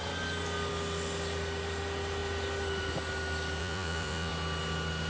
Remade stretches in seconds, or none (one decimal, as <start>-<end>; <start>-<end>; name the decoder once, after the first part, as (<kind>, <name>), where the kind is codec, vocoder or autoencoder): 3.6-4.3 (vocoder, Vocos)